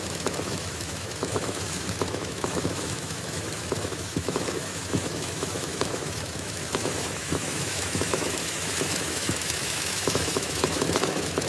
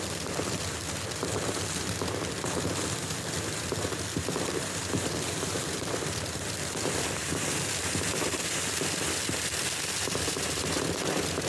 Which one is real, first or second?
second